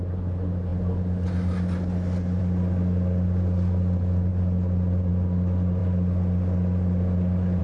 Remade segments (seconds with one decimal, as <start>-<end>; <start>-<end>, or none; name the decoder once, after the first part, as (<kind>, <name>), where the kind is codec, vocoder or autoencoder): none